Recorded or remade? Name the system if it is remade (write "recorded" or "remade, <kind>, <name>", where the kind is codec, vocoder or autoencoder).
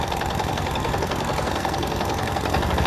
remade, codec, SNAC